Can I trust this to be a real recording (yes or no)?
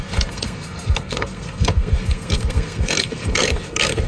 no